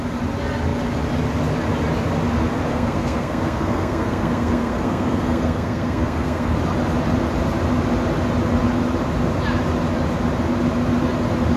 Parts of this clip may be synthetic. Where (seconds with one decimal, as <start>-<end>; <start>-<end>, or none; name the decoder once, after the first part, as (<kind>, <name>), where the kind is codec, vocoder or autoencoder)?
2.7-6.6 (codec, SNAC)